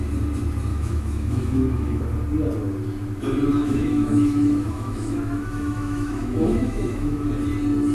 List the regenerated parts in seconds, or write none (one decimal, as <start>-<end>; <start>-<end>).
0.7-2.0; 3.6-7.3